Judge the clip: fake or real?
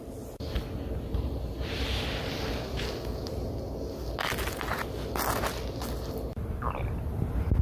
real